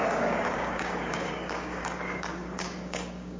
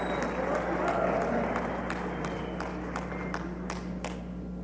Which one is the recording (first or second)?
second